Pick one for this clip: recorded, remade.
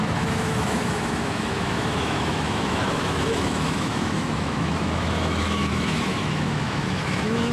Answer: remade